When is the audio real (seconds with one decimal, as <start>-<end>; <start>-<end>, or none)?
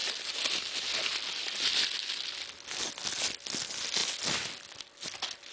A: 0.0-5.5